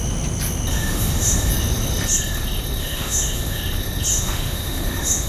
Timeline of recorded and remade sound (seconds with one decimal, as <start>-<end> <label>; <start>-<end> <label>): 0.0-0.7 recorded; 0.7-1.5 remade; 1.5-2.8 recorded; 2.8-3.6 remade; 3.6-4.1 recorded; 4.1-5.3 remade